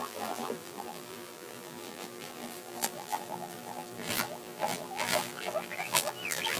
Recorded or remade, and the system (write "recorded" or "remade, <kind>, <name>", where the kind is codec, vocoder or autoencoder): remade, vocoder, BigVGAN v2